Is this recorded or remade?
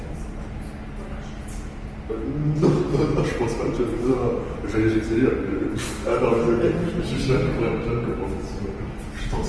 recorded